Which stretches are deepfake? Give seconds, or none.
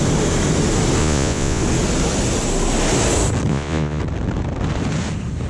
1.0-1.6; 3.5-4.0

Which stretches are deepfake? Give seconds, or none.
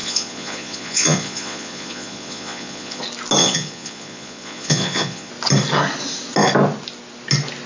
0.0-3.0; 3.4-5.3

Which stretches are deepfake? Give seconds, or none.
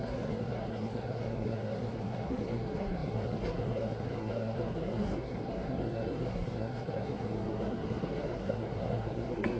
0.0-9.6